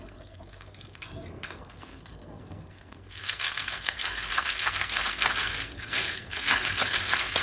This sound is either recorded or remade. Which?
remade